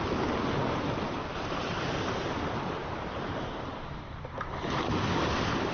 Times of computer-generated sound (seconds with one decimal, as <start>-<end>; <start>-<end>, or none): 1.2-1.8; 2.8-4.5